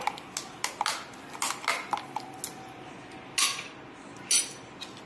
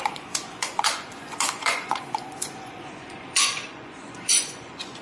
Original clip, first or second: first